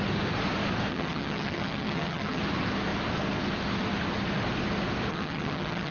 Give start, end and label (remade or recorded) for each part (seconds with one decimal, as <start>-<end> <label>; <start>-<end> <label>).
0.0-0.9 recorded; 0.9-2.4 remade; 2.4-5.1 recorded; 5.1-5.9 remade

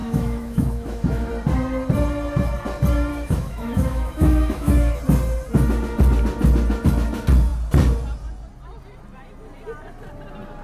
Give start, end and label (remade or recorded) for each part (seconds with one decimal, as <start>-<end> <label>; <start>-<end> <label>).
0.0-1.3 remade; 1.3-3.1 recorded; 3.1-5.0 remade; 5.0-10.6 recorded

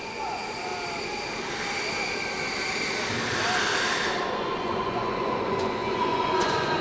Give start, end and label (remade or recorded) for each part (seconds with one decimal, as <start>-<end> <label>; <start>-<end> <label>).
0.0-0.7 remade; 0.7-4.3 recorded; 4.3-6.8 remade

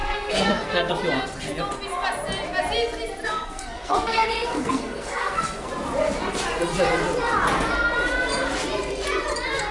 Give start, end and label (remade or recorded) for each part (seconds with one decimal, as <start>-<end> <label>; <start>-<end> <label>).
0.0-0.9 remade; 0.9-3.2 recorded; 3.2-5.7 remade; 5.7-9.7 recorded

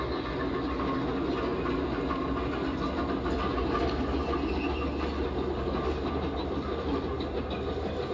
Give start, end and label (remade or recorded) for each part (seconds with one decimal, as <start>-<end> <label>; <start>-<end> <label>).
0.0-8.1 recorded

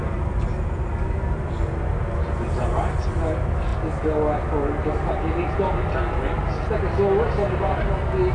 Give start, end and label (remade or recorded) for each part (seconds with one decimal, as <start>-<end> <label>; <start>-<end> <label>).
0.0-8.3 recorded

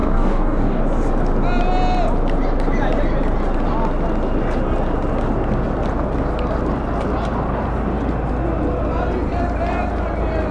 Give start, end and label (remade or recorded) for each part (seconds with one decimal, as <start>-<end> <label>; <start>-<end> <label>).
0.0-0.8 remade; 0.8-10.5 recorded